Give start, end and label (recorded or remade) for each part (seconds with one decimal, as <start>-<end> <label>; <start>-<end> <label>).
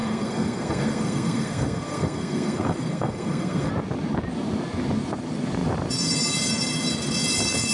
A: 0.0-3.7 remade; 3.7-7.7 recorded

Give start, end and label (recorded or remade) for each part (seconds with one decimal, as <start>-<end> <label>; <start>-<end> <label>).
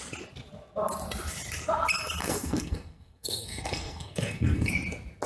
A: 0.0-2.2 recorded; 2.2-4.7 remade; 4.7-5.3 recorded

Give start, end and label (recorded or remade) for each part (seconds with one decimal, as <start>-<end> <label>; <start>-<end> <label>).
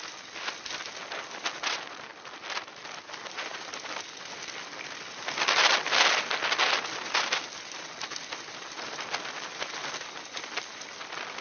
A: 0.0-11.4 recorded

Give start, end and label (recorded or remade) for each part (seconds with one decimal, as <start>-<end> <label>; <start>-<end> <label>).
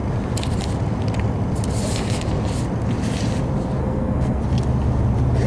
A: 0.0-3.8 recorded; 3.8-4.4 remade; 4.4-5.5 recorded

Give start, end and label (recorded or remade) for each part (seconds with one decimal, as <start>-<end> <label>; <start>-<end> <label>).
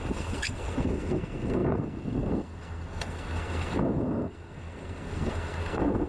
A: 0.0-6.1 remade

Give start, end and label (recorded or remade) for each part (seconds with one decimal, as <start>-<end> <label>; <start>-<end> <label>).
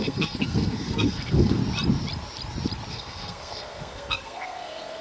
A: 0.0-1.6 remade; 1.6-2.9 recorded; 2.9-5.0 remade